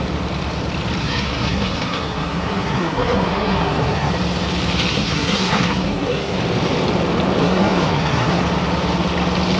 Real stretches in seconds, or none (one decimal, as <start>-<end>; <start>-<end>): 0.0-1.0; 4.1-4.9; 6.4-7.4; 8.4-9.6

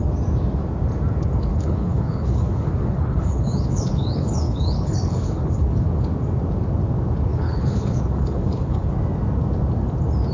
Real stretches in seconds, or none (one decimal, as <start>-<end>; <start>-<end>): 0.0-1.5; 5.9-7.3; 8.9-10.3

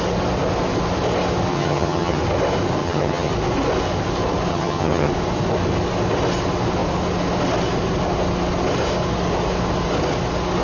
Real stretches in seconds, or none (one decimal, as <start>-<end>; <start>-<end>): 0.0-1.5; 2.2-2.8; 3.3-4.5; 5.1-10.6